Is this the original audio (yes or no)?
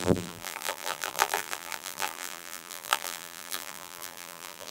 no